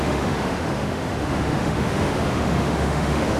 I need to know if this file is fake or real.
fake